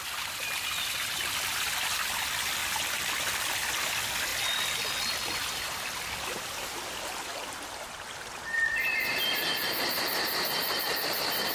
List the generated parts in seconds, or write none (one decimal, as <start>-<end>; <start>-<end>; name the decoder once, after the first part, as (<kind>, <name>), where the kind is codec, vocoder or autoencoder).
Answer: none